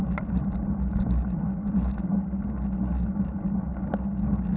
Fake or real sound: real